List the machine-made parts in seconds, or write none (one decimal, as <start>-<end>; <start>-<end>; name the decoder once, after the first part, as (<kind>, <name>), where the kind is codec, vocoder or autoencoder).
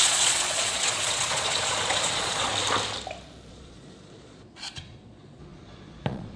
0.0-2.5 (vocoder, Vocos); 3.5-6.4